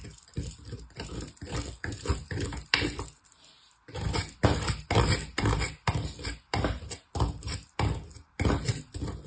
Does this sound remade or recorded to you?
recorded